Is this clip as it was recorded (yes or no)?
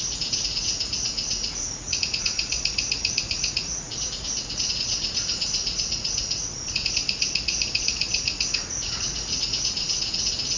no